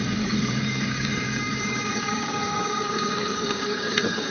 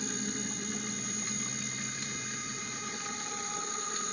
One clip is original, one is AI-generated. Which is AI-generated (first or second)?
first